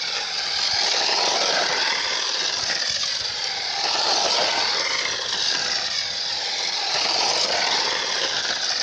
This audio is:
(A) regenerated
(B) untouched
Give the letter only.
B